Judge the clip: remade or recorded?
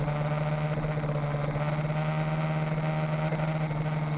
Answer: recorded